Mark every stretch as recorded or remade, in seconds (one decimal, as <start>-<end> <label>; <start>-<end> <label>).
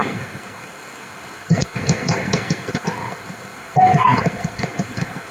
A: 0.0-5.3 remade